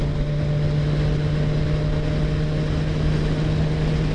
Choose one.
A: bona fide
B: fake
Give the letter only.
A